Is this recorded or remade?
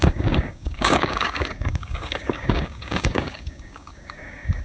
remade